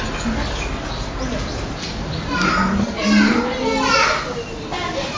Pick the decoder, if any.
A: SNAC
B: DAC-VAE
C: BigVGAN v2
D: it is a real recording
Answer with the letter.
D